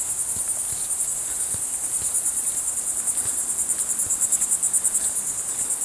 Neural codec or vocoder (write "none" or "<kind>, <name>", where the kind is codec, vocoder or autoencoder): none